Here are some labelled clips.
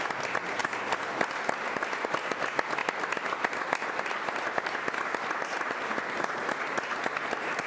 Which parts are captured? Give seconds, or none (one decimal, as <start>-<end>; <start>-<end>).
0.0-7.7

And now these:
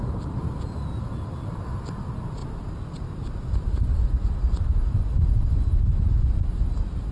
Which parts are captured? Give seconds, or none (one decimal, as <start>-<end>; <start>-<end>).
0.0-7.1

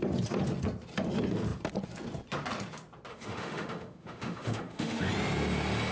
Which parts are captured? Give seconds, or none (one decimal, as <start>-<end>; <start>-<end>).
0.0-3.1; 5.1-5.9

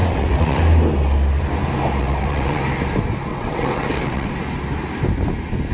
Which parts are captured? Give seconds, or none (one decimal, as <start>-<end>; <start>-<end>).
0.6-2.0; 2.6-3.3; 4.3-5.7

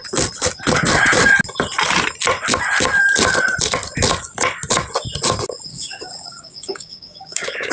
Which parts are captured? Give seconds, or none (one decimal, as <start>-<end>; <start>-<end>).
0.0-5.7